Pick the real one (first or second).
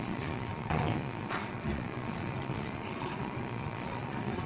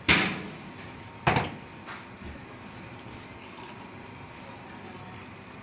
second